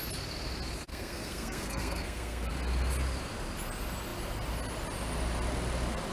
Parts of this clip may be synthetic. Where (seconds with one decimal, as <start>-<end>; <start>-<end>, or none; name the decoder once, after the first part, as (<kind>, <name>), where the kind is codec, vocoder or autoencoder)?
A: 0.9-2.5 (codec, SNAC)